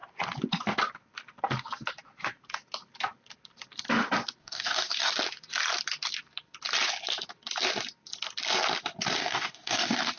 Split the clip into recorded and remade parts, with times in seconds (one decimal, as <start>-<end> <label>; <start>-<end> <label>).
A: 0.0-4.4 recorded; 4.4-5.1 remade; 5.1-9.2 recorded; 9.2-10.2 remade